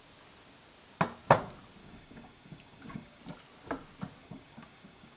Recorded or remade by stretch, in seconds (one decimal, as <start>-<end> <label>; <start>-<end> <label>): 0.0-1.8 recorded; 1.8-3.2 remade; 3.2-4.2 recorded; 4.2-5.2 remade